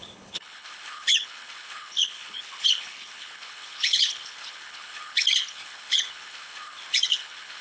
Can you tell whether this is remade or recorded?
remade